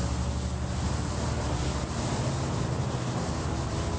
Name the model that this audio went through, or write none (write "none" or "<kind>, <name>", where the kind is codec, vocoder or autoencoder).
none